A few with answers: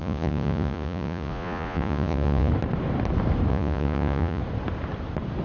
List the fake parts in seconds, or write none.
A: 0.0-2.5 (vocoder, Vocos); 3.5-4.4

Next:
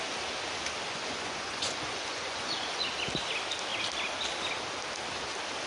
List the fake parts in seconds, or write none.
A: 0.9-2.9 (vocoder, Vocos)

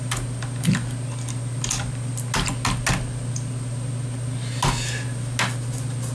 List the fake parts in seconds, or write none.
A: none